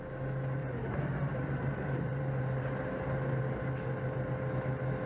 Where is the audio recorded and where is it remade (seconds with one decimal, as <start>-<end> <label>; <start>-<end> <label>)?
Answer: 0.0-0.6 recorded; 0.6-3.4 remade; 3.4-5.1 recorded